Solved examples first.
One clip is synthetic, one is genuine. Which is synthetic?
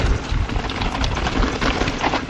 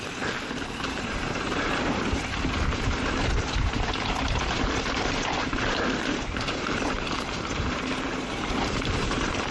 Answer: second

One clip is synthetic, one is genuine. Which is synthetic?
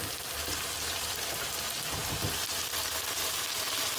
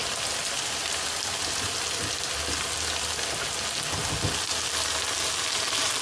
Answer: first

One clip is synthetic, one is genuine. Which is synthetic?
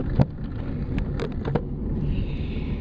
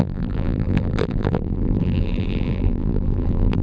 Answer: second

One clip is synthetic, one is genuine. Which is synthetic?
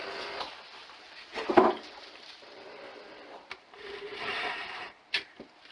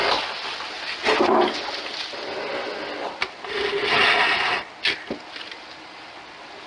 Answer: first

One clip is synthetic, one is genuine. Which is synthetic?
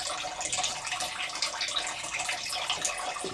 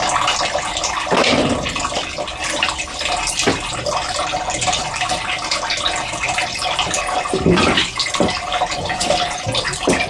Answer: second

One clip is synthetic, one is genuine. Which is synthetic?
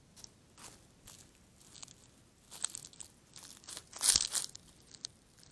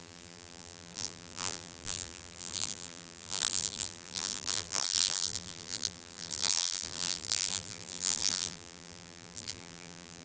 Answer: second